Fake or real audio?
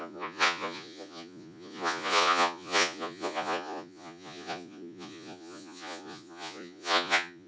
fake